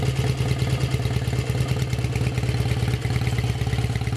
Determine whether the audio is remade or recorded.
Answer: recorded